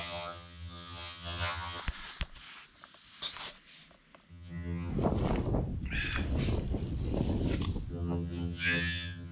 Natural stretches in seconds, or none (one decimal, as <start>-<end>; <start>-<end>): 1.8-4.3; 4.9-7.9